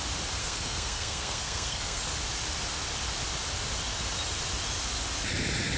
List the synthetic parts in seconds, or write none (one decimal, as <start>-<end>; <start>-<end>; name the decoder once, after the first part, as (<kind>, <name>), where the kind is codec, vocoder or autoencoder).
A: 0.4-2.0 (codec, SNAC)